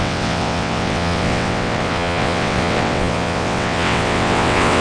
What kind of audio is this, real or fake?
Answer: fake